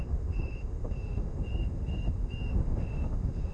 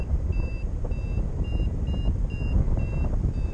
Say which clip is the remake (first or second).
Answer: first